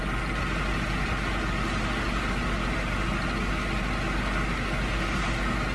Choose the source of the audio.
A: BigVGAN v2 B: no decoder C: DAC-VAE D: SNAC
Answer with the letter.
B